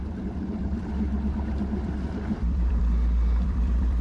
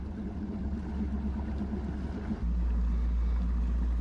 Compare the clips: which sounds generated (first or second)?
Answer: first